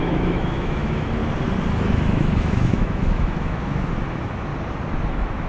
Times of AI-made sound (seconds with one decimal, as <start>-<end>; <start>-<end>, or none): 0.0-1.2; 1.9-4.5; 5.1-5.5